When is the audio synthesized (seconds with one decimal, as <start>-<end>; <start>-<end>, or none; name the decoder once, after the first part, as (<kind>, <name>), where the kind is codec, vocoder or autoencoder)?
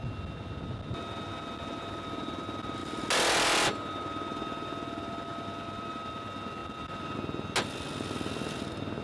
none